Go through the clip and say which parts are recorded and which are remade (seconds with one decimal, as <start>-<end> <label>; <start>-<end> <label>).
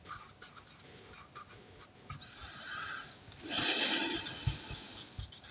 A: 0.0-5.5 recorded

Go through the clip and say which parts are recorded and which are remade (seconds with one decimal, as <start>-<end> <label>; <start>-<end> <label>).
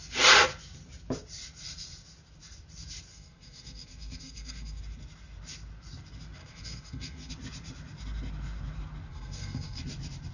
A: 0.0-3.1 recorded; 3.1-4.8 remade; 4.8-6.4 recorded; 6.4-7.3 remade; 7.3-9.1 recorded; 9.1-9.8 remade; 9.8-10.3 recorded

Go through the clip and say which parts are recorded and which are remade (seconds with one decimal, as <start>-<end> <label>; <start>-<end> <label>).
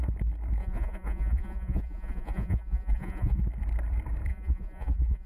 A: 0.0-0.6 recorded; 0.6-3.4 remade; 3.4-4.3 recorded; 4.3-5.3 remade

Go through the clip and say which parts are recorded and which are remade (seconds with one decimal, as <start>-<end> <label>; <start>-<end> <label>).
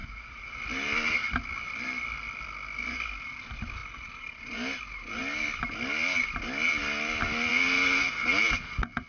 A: 0.0-0.6 remade; 0.6-9.1 recorded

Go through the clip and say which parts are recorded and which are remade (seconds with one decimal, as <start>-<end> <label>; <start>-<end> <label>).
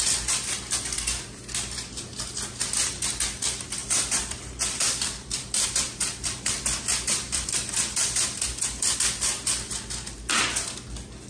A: 0.0-3.8 recorded; 3.8-9.0 remade; 9.0-11.3 recorded